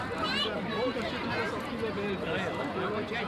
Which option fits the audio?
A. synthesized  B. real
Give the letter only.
B